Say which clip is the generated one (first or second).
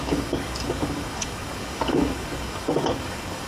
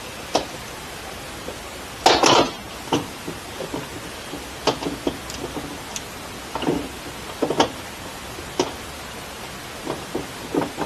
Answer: first